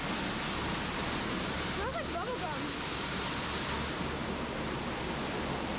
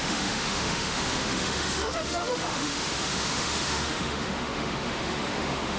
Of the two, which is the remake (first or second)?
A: second